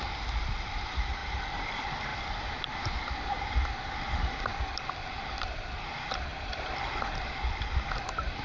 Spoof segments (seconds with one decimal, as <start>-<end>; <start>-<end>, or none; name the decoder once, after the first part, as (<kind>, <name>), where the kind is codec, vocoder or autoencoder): 0.0-1.2 (vocoder, BigVGAN v2); 1.7-2.1; 3.8-8.4